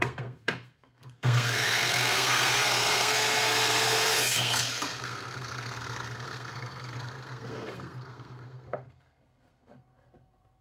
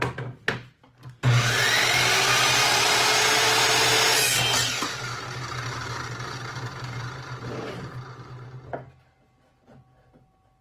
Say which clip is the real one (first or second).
second